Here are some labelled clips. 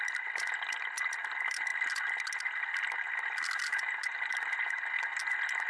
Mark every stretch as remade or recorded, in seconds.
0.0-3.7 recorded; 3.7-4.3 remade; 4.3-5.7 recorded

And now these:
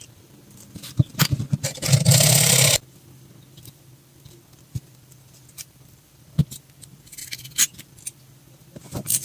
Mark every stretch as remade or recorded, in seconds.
0.0-1.1 remade; 1.1-2.4 recorded; 2.4-7.2 remade; 7.2-7.8 recorded; 7.8-9.2 remade

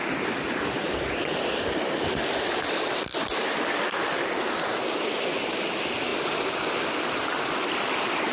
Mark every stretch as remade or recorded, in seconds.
0.0-2.5 remade; 2.5-8.3 recorded

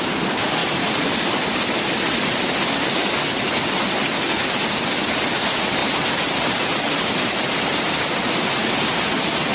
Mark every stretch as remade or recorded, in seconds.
0.0-0.6 recorded; 0.6-3.1 remade; 3.1-5.8 recorded; 5.8-8.5 remade; 8.5-9.5 recorded

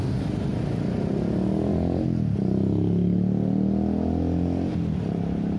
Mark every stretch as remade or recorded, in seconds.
0.0-5.6 recorded